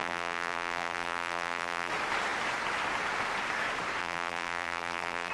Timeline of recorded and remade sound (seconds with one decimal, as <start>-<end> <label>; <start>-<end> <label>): 0.0-1.9 remade; 1.9-4.0 recorded; 4.0-5.3 remade